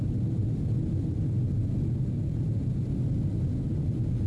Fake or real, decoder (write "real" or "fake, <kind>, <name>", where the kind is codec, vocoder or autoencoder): real